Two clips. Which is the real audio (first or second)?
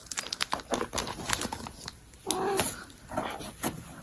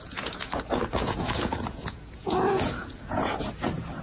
first